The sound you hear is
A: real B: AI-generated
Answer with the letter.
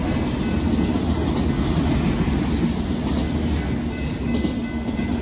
A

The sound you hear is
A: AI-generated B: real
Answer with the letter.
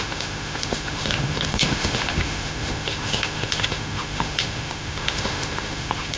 A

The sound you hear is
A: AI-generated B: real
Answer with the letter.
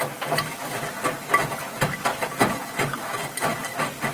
B